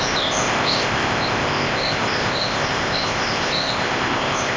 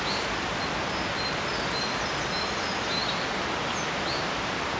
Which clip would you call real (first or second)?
second